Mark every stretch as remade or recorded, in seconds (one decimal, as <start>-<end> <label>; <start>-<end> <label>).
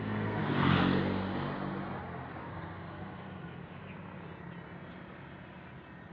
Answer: 0.0-0.4 remade; 0.4-2.4 recorded; 2.4-3.6 remade; 3.6-6.1 recorded